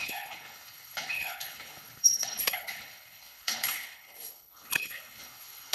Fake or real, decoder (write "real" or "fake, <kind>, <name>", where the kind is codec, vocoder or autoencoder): fake, codec, HILCodec